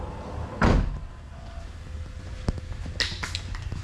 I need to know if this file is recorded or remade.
recorded